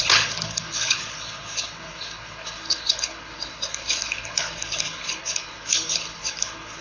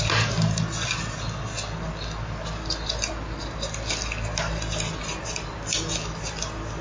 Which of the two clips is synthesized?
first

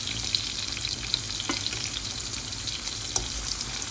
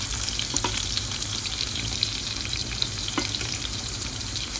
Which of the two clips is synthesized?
second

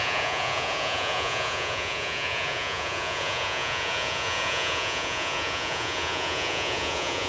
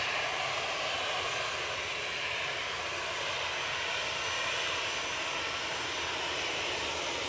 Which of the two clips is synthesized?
first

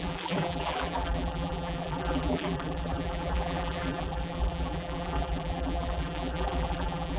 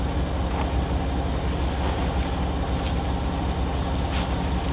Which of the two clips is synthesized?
first